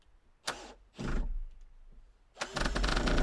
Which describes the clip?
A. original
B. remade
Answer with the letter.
A